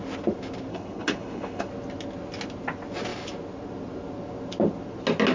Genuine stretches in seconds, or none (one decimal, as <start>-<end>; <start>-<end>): 0.0-0.7; 1.7-5.3